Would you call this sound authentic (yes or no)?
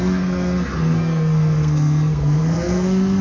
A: no